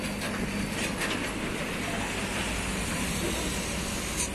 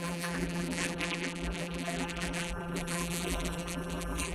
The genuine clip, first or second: first